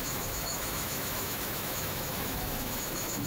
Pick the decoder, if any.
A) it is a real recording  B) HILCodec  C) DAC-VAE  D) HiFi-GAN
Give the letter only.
C